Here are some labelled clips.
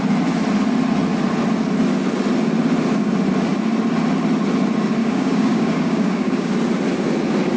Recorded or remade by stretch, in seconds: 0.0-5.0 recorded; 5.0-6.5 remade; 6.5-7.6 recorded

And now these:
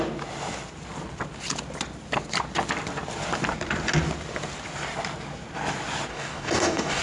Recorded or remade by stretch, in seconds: 0.0-6.1 recorded; 6.1-7.0 remade

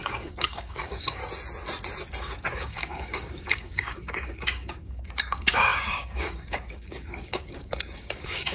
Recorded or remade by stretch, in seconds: 0.0-1.2 remade; 1.2-2.2 recorded; 2.2-8.5 remade

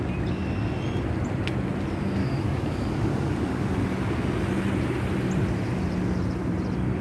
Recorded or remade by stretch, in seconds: 0.0-2.2 recorded; 2.2-3.7 remade; 3.7-7.0 recorded

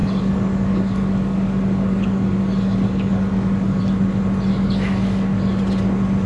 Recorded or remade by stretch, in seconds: 0.0-3.8 remade; 3.8-4.5 recorded; 4.5-5.7 remade; 5.7-6.3 recorded

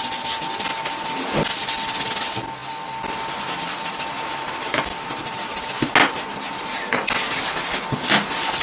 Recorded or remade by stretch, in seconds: 0.0-8.6 recorded